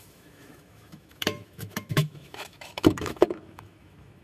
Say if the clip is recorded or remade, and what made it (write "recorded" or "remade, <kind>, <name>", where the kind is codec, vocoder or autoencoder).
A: remade, autoencoder, DAC-VAE